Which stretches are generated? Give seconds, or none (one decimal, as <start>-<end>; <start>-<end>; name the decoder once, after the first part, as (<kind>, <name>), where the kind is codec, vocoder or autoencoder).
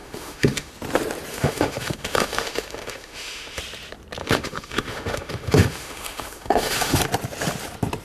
0.0-0.7 (autoencoder, DAC-VAE); 1.3-3.6; 4.2-7.0